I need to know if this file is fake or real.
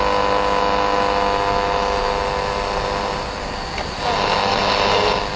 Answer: real